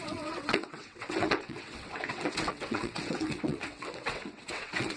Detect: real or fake fake